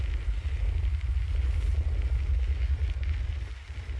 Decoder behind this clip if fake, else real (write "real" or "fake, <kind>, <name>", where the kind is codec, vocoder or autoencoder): real